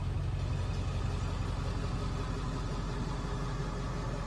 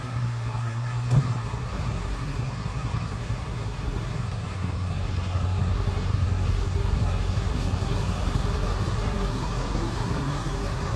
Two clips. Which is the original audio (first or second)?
first